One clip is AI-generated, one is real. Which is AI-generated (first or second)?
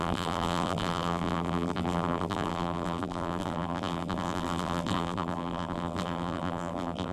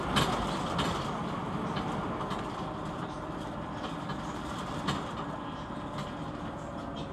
first